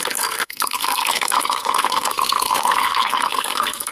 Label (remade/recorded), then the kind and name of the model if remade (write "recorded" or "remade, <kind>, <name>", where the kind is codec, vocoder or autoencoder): remade, codec, SNAC